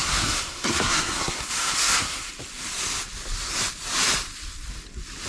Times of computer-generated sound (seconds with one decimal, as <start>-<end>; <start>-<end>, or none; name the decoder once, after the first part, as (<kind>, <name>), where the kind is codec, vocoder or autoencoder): 0.0-2.3 (codec, SNAC)